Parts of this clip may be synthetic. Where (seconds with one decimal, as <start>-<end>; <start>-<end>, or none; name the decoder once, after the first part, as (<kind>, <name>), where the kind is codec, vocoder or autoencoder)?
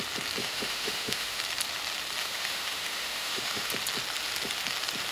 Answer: 0.4-1.4 (autoencoder, DAC-VAE); 2.2-3.7